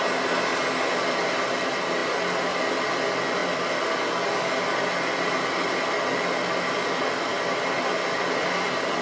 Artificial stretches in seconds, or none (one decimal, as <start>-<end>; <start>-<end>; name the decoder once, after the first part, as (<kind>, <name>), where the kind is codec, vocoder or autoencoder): 7.3-7.8 (vocoder, BigVGAN v2)